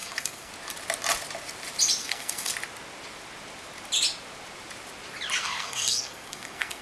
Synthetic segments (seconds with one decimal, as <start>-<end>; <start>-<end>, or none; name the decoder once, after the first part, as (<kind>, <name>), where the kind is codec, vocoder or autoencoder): 0.0-0.5 (codec, SNAC); 2.0-2.5; 5.4-6.8